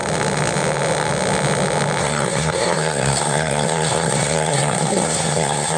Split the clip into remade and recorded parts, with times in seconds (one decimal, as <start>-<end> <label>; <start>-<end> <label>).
0.0-2.0 recorded; 2.0-5.8 remade